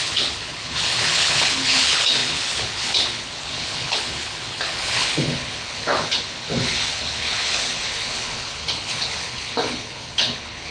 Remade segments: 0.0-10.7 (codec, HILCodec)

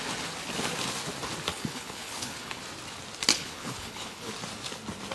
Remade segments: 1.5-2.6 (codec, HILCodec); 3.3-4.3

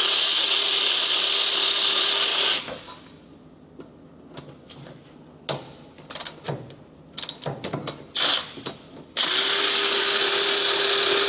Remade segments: none

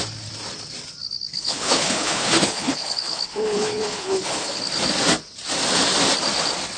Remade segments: 1.3-4.6 (codec, HILCodec)

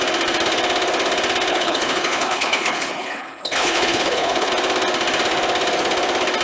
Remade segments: 1.5-4.5 (codec, HILCodec)